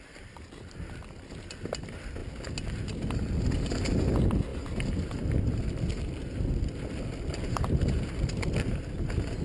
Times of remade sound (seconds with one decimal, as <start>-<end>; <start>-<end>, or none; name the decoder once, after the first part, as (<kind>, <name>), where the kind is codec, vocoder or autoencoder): none